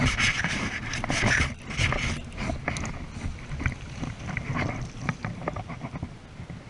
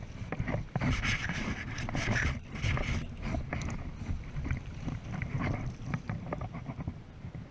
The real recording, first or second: first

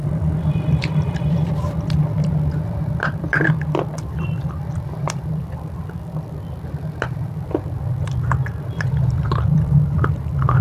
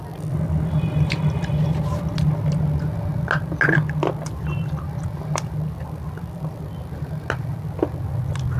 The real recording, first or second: second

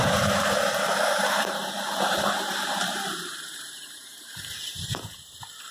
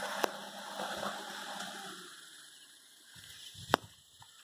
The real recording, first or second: second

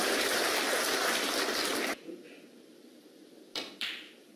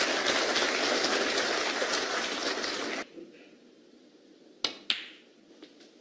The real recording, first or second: second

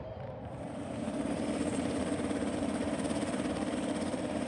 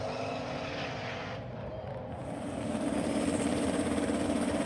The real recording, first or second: second